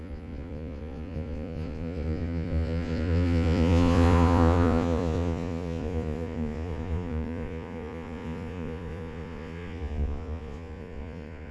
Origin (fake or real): fake